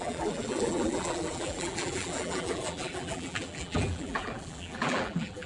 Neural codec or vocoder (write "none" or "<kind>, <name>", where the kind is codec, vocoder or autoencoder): vocoder, BigVGAN v2